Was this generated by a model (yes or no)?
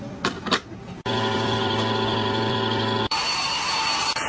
no